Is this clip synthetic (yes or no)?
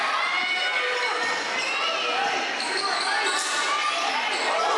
no